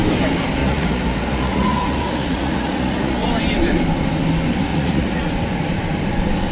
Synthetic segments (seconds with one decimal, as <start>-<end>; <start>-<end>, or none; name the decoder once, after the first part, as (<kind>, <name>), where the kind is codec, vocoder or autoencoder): 0.6-3.3 (vocoder, Vocos); 4.7-5.3